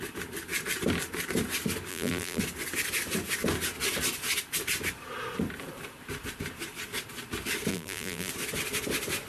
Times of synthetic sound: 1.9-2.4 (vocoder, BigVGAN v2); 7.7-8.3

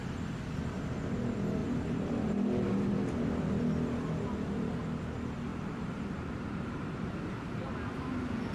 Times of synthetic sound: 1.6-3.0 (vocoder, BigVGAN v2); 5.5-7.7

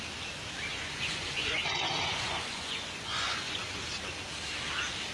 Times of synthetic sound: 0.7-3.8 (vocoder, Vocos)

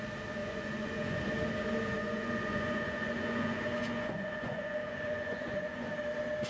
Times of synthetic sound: 0.4-1.2 (vocoder, Vocos); 2.0-5.9